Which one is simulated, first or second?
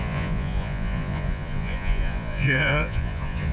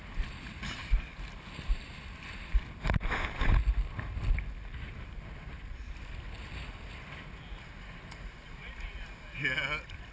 first